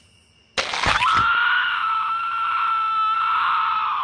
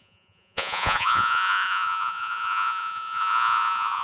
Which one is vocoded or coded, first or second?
second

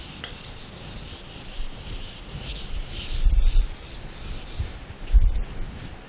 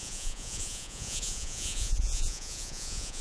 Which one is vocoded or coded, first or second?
second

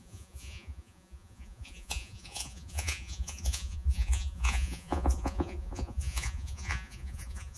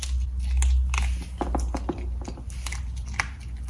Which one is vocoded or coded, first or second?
first